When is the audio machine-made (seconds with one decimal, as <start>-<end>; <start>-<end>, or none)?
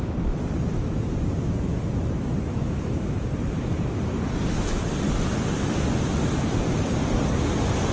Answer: 2.5-3.3